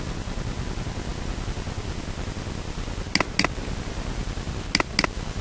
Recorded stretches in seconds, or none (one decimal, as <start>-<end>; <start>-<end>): 0.0-5.4